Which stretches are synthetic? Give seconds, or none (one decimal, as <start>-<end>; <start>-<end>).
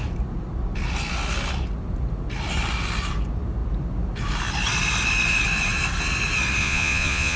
6.6-7.4